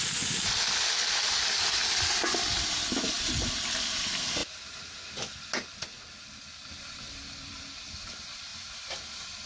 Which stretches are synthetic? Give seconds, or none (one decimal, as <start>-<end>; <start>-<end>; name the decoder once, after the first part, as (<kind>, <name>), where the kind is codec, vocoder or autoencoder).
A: 1.8-2.3 (vocoder, BigVGAN v2); 4.4-7.6